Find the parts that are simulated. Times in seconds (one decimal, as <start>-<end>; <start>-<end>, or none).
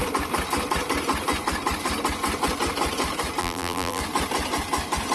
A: 3.4-4.0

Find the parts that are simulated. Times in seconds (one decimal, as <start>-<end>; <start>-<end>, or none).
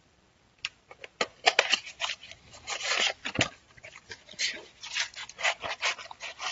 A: 0.0-5.2; 6.1-6.5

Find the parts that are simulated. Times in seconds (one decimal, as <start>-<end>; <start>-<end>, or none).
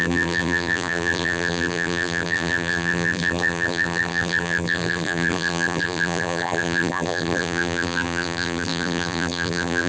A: 0.0-9.9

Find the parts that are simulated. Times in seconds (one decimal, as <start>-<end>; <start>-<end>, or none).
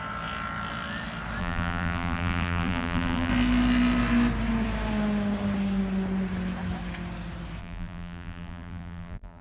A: 1.4-3.3; 7.6-9.4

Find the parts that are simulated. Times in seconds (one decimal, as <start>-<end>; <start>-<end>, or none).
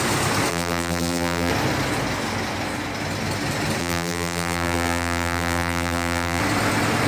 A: 0.5-1.5; 3.8-6.4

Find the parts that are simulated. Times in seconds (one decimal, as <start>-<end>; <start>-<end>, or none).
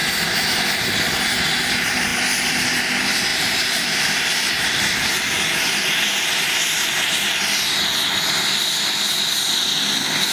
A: 3.3-5.4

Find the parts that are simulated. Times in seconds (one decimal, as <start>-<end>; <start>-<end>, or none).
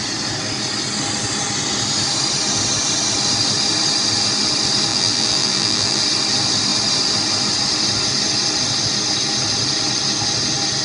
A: 4.9-6.0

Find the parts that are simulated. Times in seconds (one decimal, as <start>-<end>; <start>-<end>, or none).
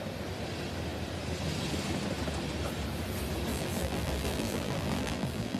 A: 3.5-5.6